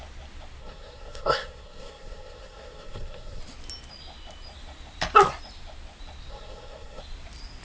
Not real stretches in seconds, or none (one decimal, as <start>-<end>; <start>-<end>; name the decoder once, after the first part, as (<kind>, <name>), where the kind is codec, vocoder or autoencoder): 0.6-3.4 (codec, SNAC); 6.3-7.0